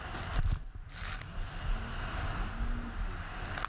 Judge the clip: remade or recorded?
recorded